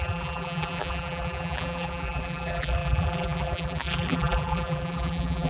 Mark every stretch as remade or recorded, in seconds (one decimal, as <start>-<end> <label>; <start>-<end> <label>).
0.0-5.5 remade